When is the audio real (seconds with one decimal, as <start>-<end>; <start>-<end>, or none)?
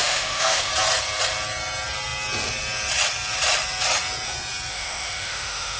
0.7-4.7